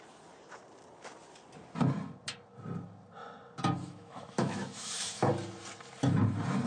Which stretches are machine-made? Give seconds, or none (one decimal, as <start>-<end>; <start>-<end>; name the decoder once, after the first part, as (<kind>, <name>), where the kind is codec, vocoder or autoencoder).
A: 3.8-5.3 (autoencoder, DAC-VAE)

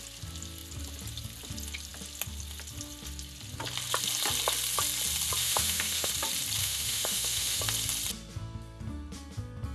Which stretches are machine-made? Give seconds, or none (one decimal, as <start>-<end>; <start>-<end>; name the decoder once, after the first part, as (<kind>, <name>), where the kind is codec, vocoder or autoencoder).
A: 5.4-6.1 (autoencoder, DAC-VAE); 6.6-7.6

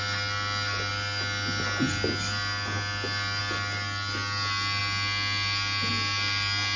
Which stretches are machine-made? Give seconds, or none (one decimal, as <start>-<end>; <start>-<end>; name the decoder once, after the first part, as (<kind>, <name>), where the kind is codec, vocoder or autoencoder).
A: none